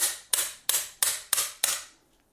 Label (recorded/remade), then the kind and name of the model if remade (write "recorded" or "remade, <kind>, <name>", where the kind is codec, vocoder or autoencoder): recorded